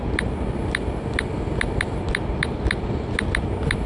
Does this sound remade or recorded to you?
recorded